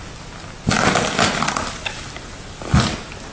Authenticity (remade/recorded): recorded